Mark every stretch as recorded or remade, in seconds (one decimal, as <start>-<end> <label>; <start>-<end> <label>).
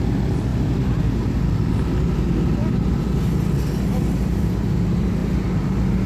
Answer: 0.0-6.1 recorded